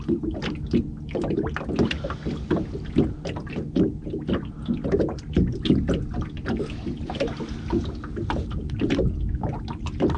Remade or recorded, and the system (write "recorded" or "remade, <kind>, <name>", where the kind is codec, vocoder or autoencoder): recorded